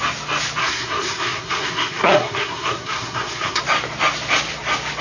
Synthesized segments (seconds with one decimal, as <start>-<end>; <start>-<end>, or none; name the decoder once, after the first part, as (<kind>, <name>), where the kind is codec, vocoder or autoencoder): 0.6-3.6 (codec, SNAC)